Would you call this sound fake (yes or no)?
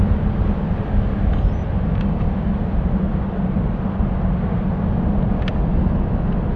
no